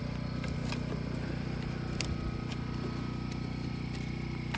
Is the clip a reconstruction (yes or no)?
no